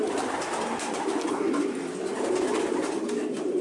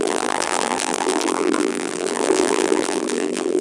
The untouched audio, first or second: first